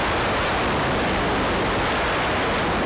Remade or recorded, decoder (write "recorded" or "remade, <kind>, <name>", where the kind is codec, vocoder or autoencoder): recorded